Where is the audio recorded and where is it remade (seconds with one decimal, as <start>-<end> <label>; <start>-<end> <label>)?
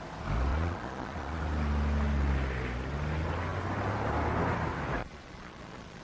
0.0-0.5 recorded; 0.5-1.4 remade; 1.4-5.0 recorded; 5.0-6.0 remade